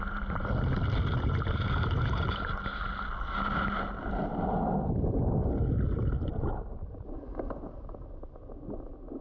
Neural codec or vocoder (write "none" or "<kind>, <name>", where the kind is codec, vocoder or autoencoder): none